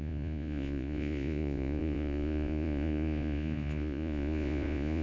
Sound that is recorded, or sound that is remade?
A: remade